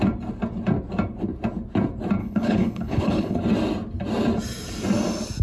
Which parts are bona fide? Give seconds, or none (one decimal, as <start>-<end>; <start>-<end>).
0.0-2.2; 3.4-5.4